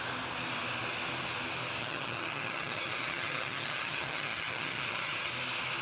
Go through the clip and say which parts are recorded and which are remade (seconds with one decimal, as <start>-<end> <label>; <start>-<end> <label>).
0.0-1.8 recorded; 1.8-5.3 remade; 5.3-5.8 recorded